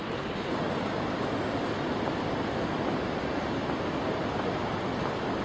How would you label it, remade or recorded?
recorded